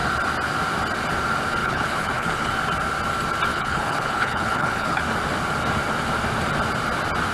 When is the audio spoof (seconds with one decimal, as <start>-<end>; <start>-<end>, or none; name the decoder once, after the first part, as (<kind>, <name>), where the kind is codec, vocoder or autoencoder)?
1.6-2.5 (codec, HILCodec); 3.5-5.0